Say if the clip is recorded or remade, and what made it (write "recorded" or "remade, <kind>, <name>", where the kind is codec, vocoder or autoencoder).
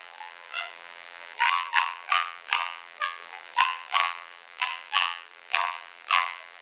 remade, vocoder, BigVGAN v2